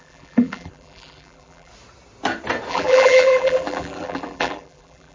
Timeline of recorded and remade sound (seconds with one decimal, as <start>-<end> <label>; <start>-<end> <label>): 0.0-1.7 remade; 1.7-2.7 recorded; 2.7-5.1 remade